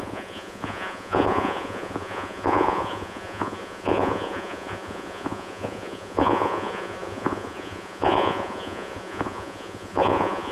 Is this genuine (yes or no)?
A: no